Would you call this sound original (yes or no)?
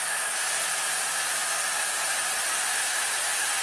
yes